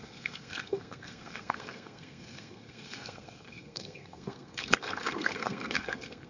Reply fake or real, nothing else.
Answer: fake